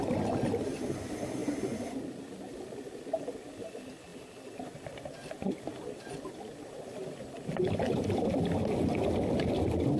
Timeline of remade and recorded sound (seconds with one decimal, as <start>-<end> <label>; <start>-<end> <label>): 0.0-10.0 recorded